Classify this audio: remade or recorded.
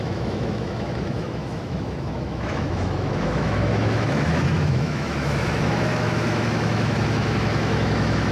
remade